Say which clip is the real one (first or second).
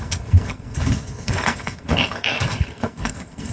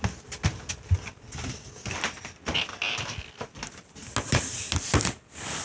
second